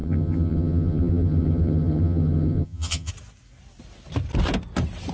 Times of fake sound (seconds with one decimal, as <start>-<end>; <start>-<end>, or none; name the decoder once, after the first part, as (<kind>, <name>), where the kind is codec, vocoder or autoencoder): 0.0-3.1 (vocoder, HiFi-GAN)